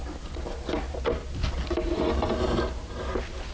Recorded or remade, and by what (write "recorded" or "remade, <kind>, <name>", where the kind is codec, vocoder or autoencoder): recorded